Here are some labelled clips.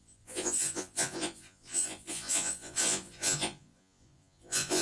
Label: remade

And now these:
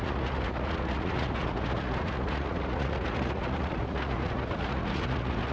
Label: remade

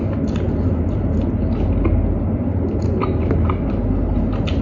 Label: recorded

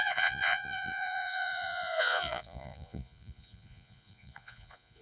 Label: remade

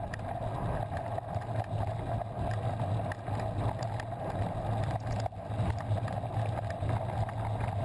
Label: recorded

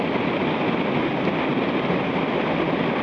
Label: recorded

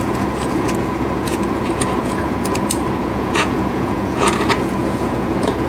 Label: remade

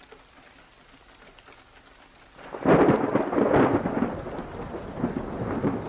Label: recorded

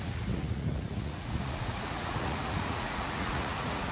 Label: remade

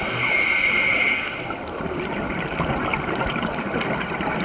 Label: recorded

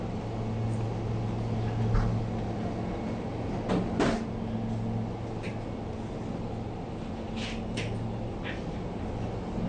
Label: recorded